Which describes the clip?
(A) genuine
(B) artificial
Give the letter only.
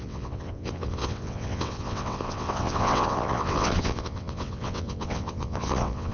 B